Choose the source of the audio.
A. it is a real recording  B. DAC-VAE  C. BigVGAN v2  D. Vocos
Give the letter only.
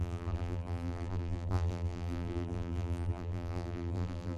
C